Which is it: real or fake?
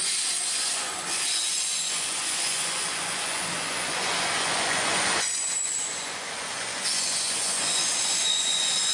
fake